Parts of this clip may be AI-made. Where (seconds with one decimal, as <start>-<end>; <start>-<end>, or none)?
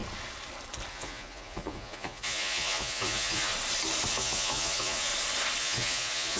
0.9-3.5; 4.1-5.1; 5.6-6.4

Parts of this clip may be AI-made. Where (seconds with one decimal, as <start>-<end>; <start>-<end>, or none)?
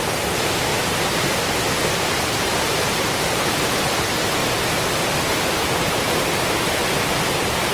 0.0-4.4; 5.4-7.7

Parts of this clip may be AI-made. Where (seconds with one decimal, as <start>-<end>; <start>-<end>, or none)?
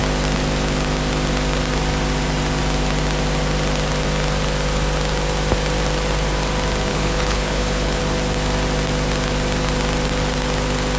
6.9-8.0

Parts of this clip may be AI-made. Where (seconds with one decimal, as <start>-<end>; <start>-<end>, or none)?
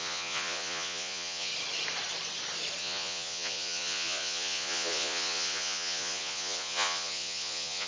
0.0-1.5; 2.8-7.9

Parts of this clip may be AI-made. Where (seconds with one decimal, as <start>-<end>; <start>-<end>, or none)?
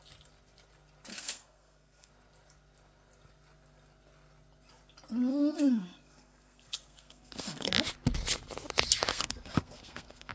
1.1-2.1; 5.3-7.7; 9.1-10.3